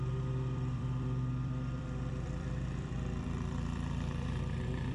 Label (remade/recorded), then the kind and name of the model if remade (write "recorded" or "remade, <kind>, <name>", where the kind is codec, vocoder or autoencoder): remade, vocoder, BigVGAN v2